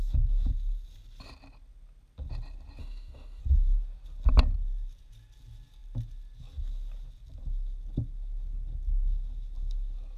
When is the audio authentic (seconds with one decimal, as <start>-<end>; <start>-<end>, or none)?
0.0-2.8; 3.4-10.2